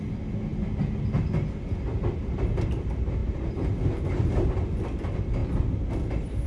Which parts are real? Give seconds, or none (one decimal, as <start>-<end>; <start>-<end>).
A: 0.0-6.5